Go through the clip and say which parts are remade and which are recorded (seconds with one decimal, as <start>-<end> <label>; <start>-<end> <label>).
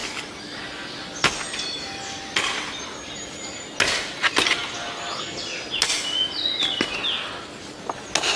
0.0-8.4 recorded